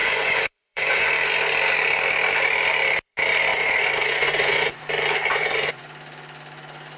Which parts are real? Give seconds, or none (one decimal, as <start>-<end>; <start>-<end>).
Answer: 1.1-3.5; 4.8-5.3; 5.9-7.0